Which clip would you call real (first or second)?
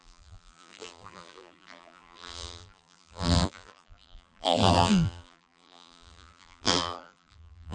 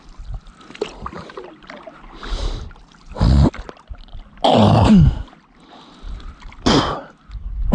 second